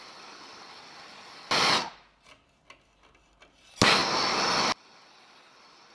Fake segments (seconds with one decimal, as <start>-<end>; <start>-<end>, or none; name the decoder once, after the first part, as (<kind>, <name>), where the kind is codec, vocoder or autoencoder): none